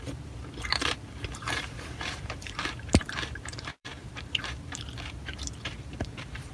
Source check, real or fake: fake